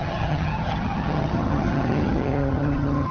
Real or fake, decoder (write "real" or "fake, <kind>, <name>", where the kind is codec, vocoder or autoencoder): fake, vocoder, HiFi-GAN